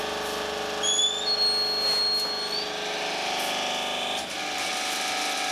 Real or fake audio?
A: real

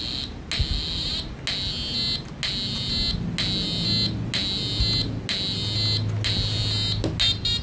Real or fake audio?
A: real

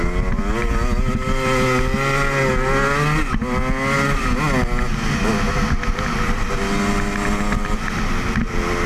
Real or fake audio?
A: real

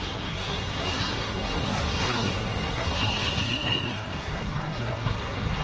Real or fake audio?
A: fake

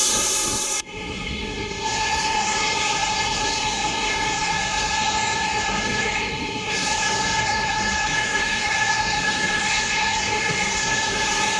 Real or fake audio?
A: fake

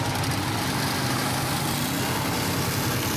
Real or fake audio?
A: real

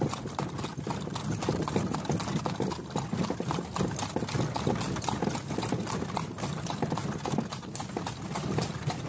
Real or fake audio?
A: real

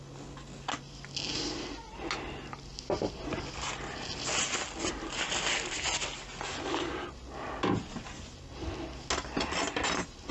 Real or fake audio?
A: real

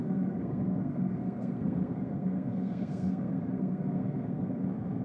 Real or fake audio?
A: fake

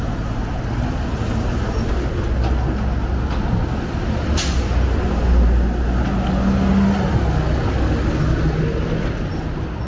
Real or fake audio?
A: real